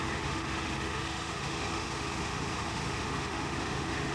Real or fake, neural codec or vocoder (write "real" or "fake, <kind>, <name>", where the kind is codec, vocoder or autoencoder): fake, autoencoder, DAC-VAE